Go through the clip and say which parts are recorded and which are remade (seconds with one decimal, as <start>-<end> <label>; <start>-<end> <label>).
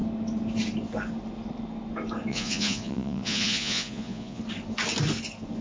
0.0-2.3 recorded; 2.3-4.4 remade; 4.4-5.6 recorded